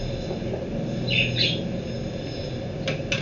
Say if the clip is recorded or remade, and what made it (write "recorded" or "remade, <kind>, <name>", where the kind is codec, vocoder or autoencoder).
recorded